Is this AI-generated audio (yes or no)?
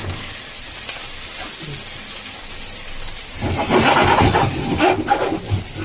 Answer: no